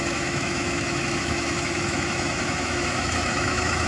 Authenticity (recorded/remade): remade